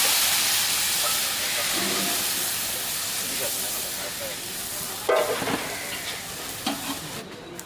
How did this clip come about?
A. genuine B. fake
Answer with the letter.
A